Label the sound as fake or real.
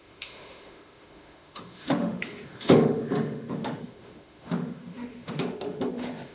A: fake